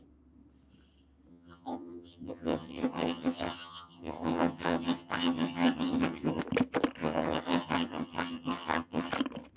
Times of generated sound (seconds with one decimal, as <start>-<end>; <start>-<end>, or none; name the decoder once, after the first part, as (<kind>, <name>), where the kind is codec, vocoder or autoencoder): 1.3-6.4 (vocoder, HiFi-GAN); 7.0-9.1

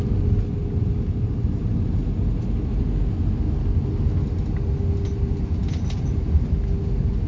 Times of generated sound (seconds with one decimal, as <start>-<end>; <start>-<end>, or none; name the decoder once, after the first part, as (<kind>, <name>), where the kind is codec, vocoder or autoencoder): none

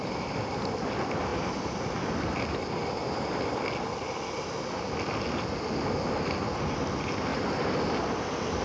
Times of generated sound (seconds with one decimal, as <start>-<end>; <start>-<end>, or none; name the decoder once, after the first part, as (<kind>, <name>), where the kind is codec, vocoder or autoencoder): none

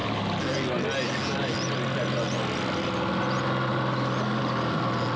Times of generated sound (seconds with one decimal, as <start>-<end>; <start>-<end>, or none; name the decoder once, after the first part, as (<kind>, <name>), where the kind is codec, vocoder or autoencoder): none

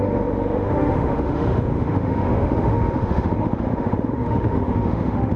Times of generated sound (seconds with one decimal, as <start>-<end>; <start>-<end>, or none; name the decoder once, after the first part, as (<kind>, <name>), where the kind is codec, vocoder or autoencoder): 0.0-5.4 (autoencoder, DAC-VAE)